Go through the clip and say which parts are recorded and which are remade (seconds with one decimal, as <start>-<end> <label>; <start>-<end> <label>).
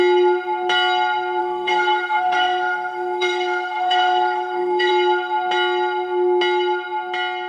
0.0-1.4 recorded; 1.4-4.9 remade; 4.9-7.5 recorded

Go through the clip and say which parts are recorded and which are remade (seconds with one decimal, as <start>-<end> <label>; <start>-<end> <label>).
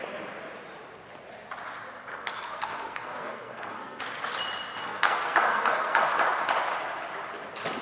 0.0-2.1 recorded; 2.1-4.0 remade; 4.0-4.9 recorded; 4.9-6.1 remade; 6.1-7.8 recorded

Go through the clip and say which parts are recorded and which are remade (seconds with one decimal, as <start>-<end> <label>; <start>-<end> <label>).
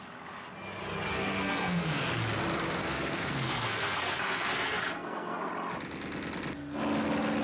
0.0-1.1 recorded; 1.1-2.0 remade; 2.0-2.8 recorded; 2.8-5.5 remade; 5.5-7.4 recorded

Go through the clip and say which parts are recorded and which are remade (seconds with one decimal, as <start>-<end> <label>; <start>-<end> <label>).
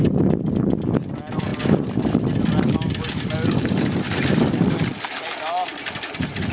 0.0-6.5 recorded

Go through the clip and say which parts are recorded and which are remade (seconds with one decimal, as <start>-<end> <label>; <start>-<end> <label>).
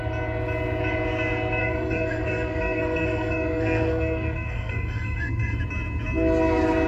0.0-1.6 recorded; 1.6-5.6 remade; 5.6-6.9 recorded